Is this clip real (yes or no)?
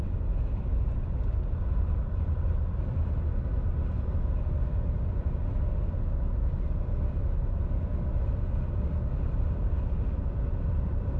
yes